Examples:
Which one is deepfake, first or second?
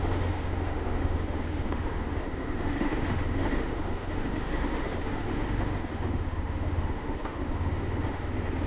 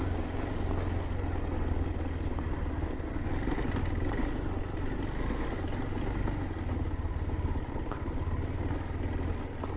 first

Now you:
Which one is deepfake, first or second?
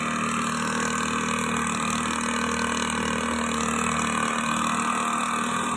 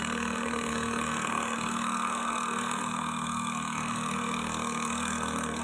second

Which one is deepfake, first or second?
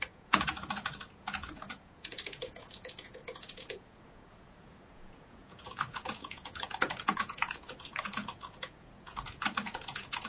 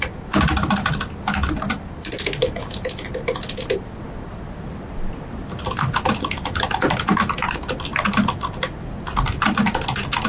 first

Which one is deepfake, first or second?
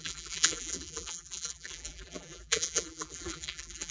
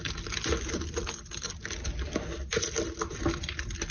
first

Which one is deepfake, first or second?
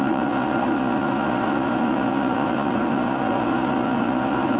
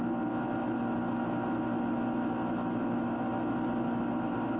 first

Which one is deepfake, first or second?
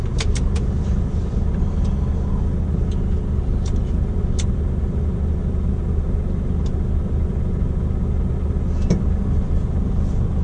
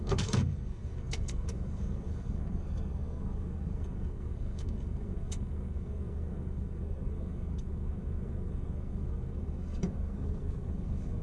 second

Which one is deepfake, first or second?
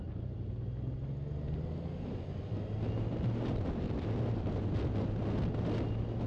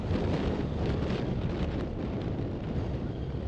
second